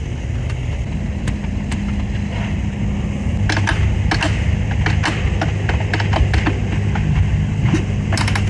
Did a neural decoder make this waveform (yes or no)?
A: no